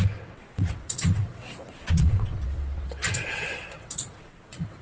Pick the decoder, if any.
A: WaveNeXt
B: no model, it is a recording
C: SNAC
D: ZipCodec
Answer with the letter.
A